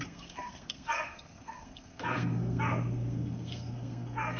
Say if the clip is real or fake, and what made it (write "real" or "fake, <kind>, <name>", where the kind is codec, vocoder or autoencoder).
fake, codec, SNAC